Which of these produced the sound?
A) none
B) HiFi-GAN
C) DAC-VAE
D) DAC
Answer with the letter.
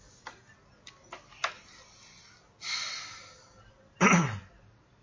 A